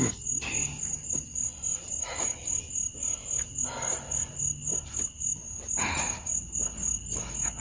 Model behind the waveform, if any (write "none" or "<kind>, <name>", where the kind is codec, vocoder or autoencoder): none